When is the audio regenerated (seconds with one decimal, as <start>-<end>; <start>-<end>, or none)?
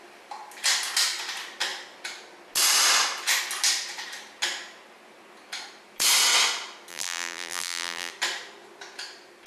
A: 6.9-8.1